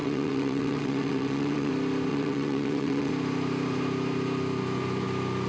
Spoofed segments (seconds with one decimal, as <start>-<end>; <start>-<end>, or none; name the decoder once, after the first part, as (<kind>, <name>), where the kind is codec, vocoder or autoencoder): 0.0-1.7 (vocoder, WaveNeXt); 2.1-3.1